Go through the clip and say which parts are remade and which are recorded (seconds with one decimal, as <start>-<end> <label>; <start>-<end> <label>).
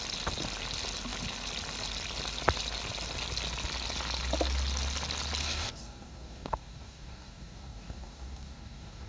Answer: 0.0-5.4 recorded; 5.4-9.1 remade